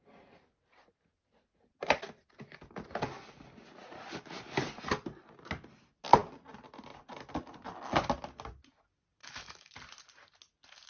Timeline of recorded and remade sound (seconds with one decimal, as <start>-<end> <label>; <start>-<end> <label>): 0.0-9.2 recorded; 9.2-9.7 remade; 9.7-10.9 recorded